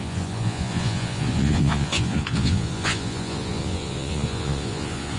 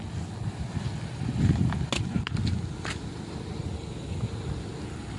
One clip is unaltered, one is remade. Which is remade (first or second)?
first